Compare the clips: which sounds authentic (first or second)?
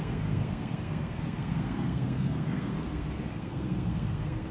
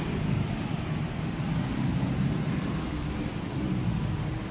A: second